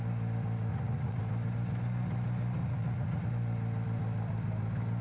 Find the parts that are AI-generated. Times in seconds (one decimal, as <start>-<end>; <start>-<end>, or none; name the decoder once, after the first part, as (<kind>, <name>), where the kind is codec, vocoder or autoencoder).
0.7-1.2 (vocoder, Vocos); 2.6-3.3